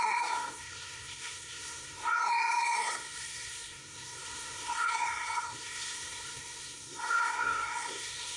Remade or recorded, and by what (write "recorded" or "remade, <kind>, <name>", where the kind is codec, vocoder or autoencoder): remade, codec, SNAC